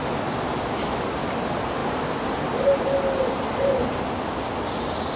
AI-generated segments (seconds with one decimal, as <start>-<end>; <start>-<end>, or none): none